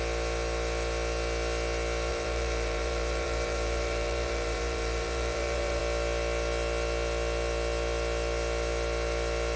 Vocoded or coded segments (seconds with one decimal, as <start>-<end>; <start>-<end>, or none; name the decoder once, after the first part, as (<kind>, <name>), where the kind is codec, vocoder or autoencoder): 2.1-5.8 (vocoder, BigVGAN v2)